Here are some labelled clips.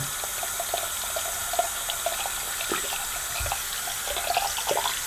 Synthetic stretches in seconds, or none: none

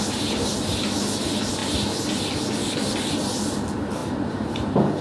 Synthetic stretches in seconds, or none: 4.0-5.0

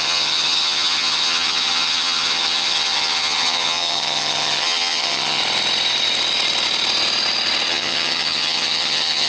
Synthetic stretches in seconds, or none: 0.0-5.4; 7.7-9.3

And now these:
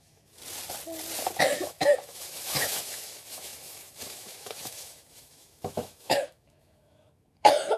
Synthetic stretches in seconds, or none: 0.0-0.4; 1.4-7.8

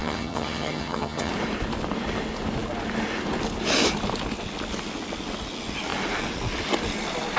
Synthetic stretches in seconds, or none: 0.0-1.3